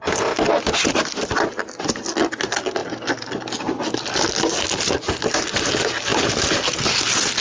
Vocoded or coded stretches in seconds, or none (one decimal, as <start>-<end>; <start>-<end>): none